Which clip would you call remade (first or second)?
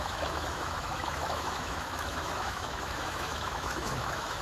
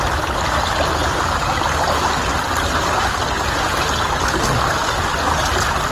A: first